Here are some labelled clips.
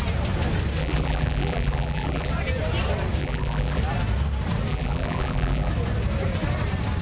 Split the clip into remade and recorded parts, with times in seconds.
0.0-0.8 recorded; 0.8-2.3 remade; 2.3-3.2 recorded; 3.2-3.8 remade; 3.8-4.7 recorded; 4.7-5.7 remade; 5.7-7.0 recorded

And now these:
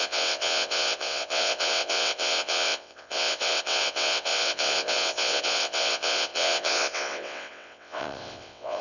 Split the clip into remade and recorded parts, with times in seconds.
0.0-8.8 remade

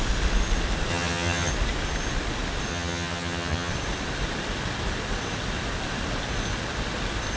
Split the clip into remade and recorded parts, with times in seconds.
0.0-0.9 recorded; 0.9-1.5 remade; 1.5-2.7 recorded; 2.7-3.7 remade; 3.7-7.4 recorded

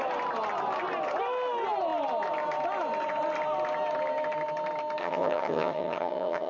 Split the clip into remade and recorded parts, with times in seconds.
0.0-5.0 recorded; 5.0-6.5 remade

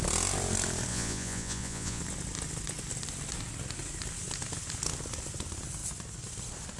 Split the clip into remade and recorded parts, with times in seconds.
0.0-0.9 recorded; 0.9-2.0 remade; 2.0-6.8 recorded

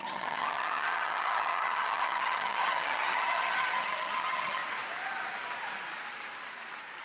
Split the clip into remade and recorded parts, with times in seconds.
0.0-4.6 remade; 4.6-7.0 recorded